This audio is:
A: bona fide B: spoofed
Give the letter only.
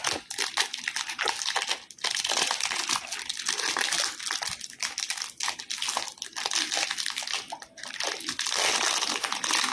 A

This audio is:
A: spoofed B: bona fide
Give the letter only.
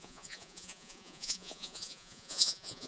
A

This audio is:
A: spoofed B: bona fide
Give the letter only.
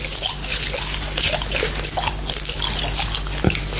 B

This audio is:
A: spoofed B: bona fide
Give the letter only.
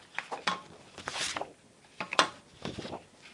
B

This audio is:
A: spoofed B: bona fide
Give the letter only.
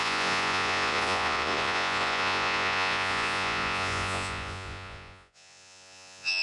A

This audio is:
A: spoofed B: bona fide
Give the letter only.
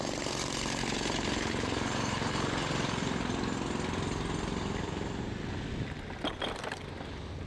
B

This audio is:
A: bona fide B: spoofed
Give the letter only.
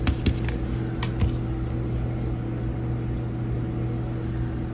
A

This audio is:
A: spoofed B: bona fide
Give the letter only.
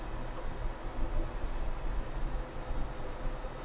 B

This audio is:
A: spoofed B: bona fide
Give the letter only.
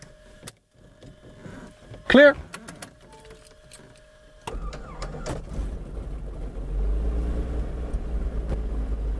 B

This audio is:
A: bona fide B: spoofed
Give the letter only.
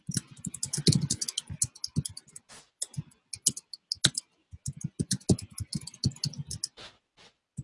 A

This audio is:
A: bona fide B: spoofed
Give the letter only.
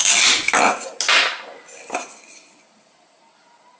A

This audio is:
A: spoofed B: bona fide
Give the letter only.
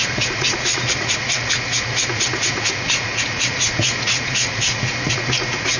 A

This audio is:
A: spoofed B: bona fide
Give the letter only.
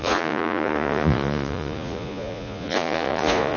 A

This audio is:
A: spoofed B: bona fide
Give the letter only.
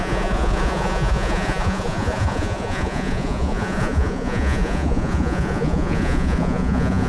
A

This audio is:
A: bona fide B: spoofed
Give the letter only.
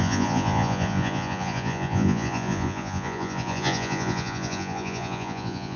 B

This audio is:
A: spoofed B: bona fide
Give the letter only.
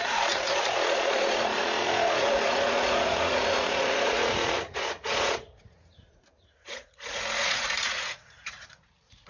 A